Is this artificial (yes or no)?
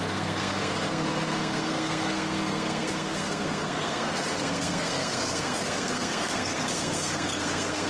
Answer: yes